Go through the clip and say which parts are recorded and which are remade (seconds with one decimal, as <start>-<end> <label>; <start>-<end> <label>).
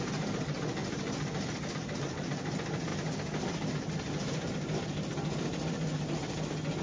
0.0-6.8 recorded